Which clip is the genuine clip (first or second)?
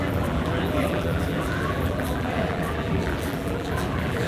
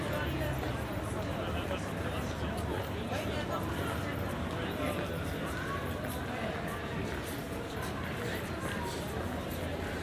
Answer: second